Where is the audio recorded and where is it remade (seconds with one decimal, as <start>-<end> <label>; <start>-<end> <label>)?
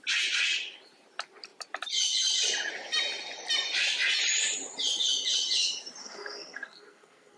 0.0-6.0 recorded; 6.0-7.4 remade